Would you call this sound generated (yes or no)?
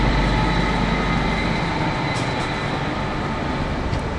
no